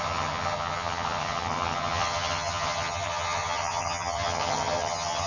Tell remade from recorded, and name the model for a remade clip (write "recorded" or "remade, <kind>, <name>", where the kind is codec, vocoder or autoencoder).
remade, vocoder, HiFi-GAN